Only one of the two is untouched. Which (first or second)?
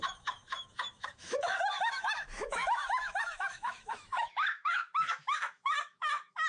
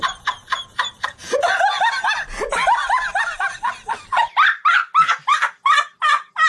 second